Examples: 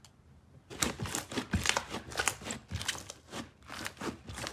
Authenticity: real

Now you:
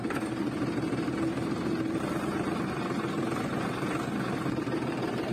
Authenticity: fake